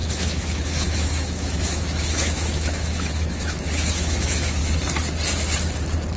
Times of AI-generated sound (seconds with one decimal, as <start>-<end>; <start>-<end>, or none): 0.0-4.6